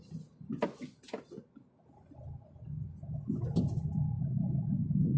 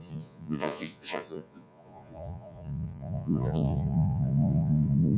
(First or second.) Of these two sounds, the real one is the first